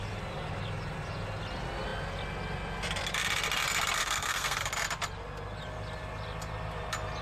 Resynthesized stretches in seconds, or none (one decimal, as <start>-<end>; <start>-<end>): 4.0-4.7